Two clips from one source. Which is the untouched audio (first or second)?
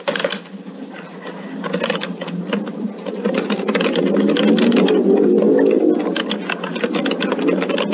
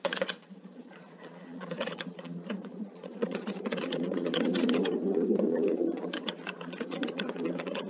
first